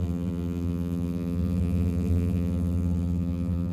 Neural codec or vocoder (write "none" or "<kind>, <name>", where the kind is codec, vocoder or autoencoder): vocoder, BigVGAN v2